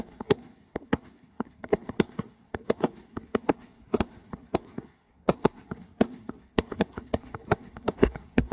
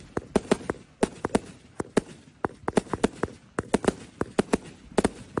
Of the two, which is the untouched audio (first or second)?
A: second